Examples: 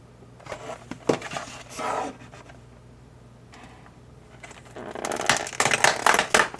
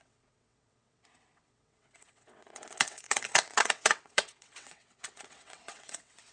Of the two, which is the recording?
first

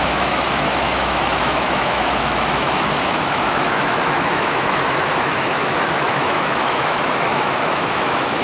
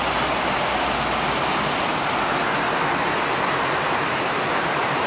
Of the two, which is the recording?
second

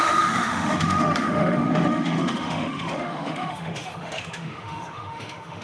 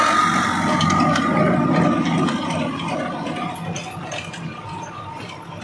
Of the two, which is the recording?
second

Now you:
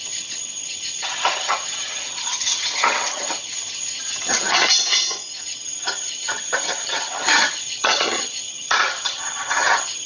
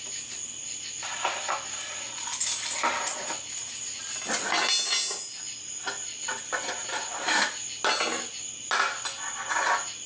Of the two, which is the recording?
second